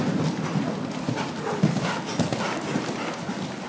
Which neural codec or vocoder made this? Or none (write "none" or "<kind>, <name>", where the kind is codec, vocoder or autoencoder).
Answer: none